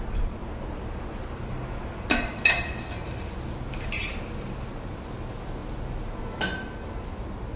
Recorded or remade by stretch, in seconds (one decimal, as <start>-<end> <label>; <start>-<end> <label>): 0.0-7.6 recorded